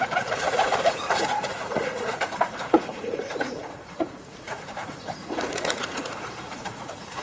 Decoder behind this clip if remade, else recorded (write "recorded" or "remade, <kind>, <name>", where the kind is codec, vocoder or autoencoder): remade, vocoder, Vocos